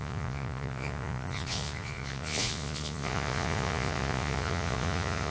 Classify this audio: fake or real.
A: fake